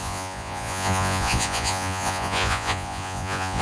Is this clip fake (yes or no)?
yes